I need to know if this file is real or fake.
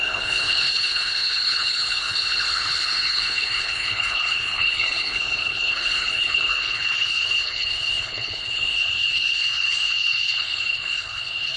fake